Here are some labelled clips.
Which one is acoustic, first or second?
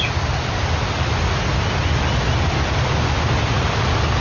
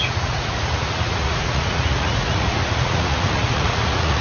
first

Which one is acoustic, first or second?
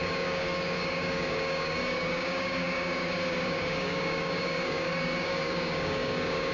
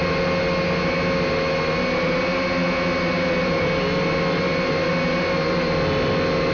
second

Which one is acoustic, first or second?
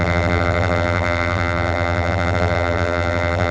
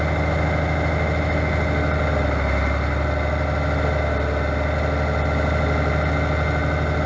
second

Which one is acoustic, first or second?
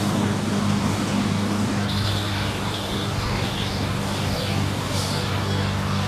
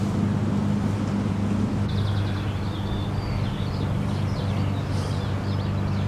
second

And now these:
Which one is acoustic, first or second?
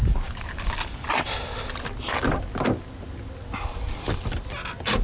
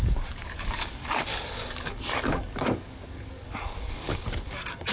first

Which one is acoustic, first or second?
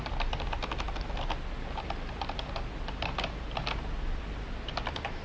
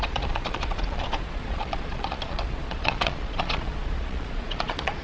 first